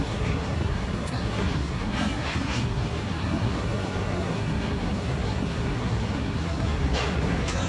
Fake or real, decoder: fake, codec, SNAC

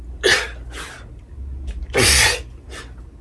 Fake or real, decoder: real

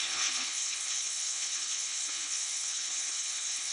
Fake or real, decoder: fake, codec, HILCodec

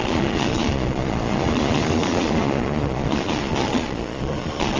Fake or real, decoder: fake, vocoder, Vocos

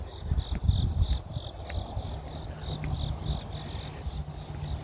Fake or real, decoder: real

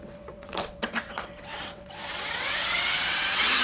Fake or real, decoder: fake, vocoder, WaveNeXt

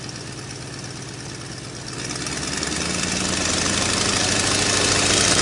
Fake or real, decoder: real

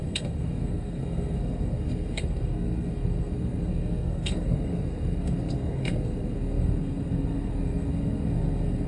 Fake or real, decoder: fake, codec, SNAC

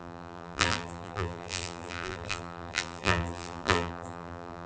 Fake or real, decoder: fake, vocoder, BigVGAN v2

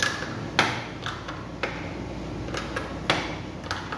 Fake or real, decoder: real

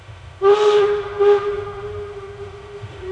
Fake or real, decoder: fake, autoencoder, DAC-VAE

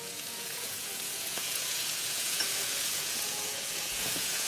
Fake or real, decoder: fake, vocoder, Vocos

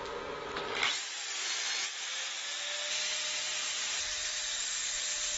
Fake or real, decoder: real